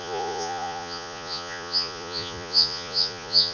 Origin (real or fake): fake